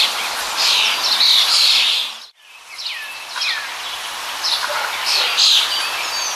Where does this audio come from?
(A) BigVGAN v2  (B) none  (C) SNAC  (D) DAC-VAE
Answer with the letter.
B